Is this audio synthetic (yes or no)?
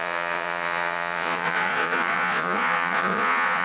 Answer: yes